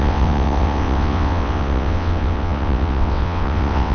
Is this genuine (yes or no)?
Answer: no